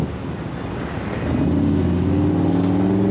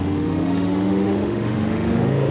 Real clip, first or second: first